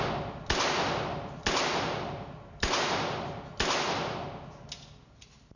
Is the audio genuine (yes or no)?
yes